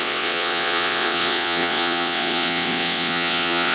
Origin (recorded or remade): remade